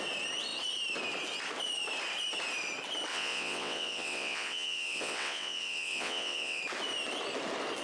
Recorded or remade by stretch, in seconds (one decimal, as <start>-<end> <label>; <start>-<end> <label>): 0.0-3.1 recorded; 3.1-6.6 remade; 6.6-7.8 recorded